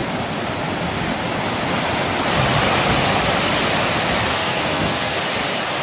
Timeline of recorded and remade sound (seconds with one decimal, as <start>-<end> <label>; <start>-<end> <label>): 0.0-4.3 recorded; 4.3-5.2 remade; 5.2-5.8 recorded